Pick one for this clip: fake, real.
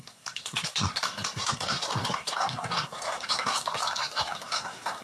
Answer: fake